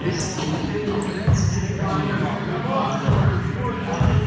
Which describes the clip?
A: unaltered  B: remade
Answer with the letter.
A